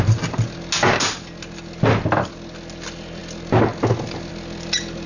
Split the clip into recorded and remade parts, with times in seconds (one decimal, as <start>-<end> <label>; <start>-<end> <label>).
0.0-5.1 recorded

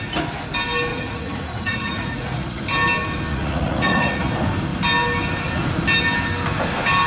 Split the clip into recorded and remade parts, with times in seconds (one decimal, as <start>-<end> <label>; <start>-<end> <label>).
0.0-0.9 recorded; 0.9-2.6 remade; 2.6-3.3 recorded; 3.3-4.3 remade; 4.3-7.1 recorded

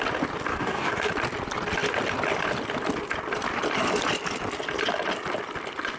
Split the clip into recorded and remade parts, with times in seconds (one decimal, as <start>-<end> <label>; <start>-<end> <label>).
0.0-0.5 recorded; 0.5-1.1 remade; 1.1-6.0 recorded

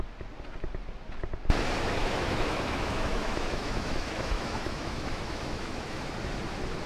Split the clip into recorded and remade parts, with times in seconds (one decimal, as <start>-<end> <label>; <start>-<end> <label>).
0.0-2.0 recorded; 2.0-6.1 remade; 6.1-6.9 recorded